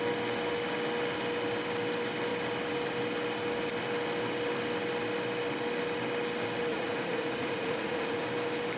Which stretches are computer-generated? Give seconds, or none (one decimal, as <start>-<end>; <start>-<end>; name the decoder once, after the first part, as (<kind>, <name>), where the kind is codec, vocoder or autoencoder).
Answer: 6.7-8.2 (vocoder, Vocos)